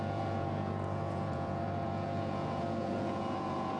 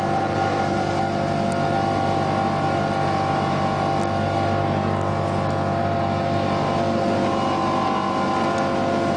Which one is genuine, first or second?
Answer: second